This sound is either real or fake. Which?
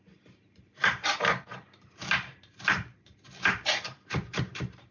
fake